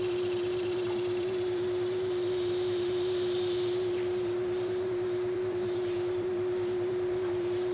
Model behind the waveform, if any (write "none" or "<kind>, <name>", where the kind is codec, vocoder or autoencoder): vocoder, BigVGAN v2